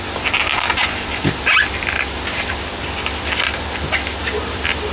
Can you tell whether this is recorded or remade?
recorded